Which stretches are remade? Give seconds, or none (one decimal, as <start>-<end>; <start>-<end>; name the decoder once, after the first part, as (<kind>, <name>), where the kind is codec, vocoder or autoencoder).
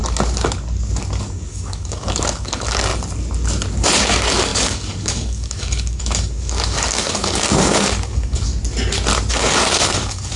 1.2-2.9 (codec, DAC); 4.0-8.5; 9.3-10.4